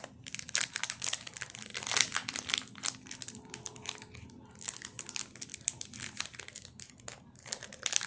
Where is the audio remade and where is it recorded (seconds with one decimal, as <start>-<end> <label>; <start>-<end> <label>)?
0.0-1.7 recorded; 1.7-2.5 remade; 2.5-8.1 recorded